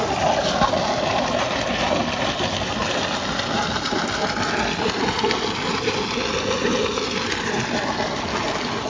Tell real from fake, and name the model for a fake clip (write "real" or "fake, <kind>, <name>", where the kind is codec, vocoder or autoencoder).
real